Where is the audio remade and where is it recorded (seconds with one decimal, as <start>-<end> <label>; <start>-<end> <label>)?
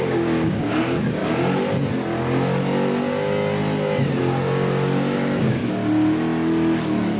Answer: 0.0-1.2 remade; 1.2-4.2 recorded; 4.2-5.6 remade; 5.6-7.2 recorded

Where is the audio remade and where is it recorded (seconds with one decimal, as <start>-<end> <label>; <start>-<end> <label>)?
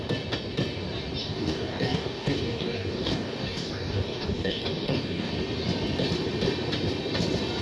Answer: 0.0-1.2 recorded; 1.2-5.3 remade; 5.3-7.6 recorded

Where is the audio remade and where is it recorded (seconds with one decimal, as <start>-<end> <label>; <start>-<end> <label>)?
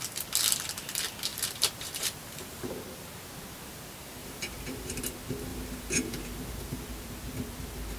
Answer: 0.0-1.3 recorded; 1.3-2.7 remade; 2.7-4.2 recorded; 4.2-5.0 remade; 5.0-5.5 recorded; 5.5-6.9 remade; 6.9-8.0 recorded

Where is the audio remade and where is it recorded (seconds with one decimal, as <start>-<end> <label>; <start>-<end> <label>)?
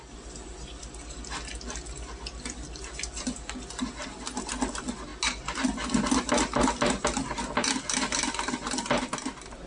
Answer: 0.0-9.7 recorded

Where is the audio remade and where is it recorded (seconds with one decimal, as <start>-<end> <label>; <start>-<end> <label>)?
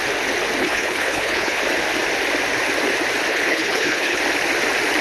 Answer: 0.0-0.6 recorded; 0.6-1.6 remade; 1.6-3.3 recorded; 3.3-4.2 remade; 4.2-5.0 recorded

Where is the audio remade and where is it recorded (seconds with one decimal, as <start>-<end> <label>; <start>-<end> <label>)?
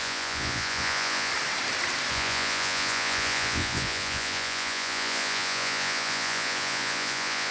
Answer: 0.0-1.3 remade; 1.3-2.1 recorded; 2.1-7.5 remade